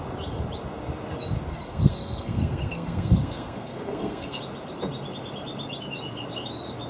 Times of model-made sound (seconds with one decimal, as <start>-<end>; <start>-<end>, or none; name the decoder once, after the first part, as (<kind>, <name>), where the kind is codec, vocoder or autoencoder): 1.5-4.4 (codec, SNAC)